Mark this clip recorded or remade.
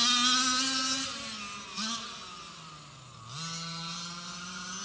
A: recorded